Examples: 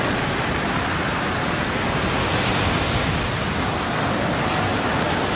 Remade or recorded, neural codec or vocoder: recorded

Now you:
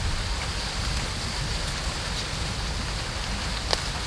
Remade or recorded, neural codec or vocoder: recorded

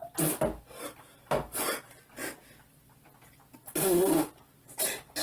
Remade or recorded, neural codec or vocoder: recorded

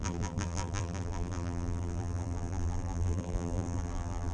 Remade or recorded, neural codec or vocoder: remade, vocoder, BigVGAN v2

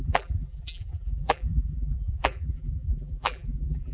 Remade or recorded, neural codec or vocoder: remade, vocoder, BigVGAN v2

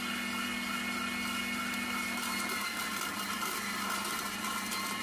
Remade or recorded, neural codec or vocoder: recorded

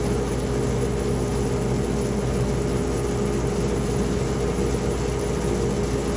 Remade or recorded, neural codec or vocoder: recorded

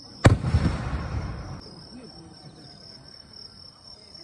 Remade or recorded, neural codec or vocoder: remade, vocoder, BigVGAN v2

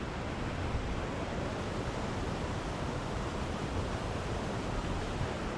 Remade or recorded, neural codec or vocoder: remade, vocoder, BigVGAN v2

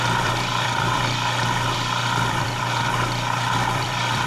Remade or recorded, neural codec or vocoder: remade, vocoder, BigVGAN v2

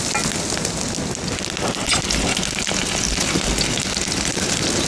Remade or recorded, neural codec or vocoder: recorded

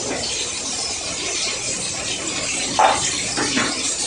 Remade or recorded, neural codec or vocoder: remade, vocoder, BigVGAN v2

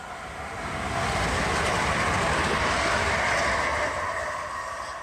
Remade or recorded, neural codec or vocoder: recorded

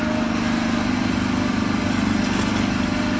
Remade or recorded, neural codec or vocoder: recorded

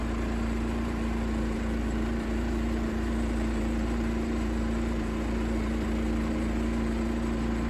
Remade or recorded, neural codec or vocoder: remade, vocoder, BigVGAN v2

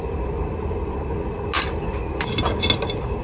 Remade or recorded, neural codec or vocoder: recorded